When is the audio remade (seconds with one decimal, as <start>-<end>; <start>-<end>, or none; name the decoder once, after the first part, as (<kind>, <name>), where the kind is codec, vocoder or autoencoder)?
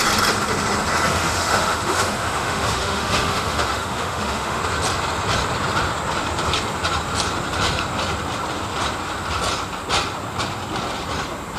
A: 1.1-4.6 (autoencoder, DAC-VAE)